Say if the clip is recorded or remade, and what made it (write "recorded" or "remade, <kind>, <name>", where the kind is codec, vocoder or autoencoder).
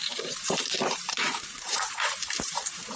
remade, vocoder, BigVGAN v2